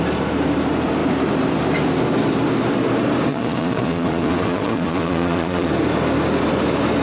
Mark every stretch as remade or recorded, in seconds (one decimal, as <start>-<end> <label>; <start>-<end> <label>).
0.0-3.3 recorded; 3.3-5.7 remade; 5.7-7.0 recorded